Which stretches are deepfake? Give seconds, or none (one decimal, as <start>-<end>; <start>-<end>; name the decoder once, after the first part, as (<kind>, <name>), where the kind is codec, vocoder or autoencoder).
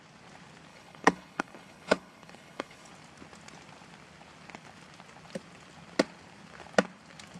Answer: 0.7-2.9 (codec, HILCodec)